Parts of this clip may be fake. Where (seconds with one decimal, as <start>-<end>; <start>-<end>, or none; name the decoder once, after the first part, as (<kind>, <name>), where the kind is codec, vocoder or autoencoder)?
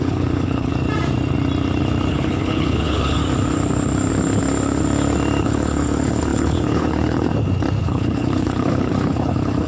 0.0-0.7 (codec, HILCodec); 2.1-3.2; 5.4-7.3; 7.8-9.7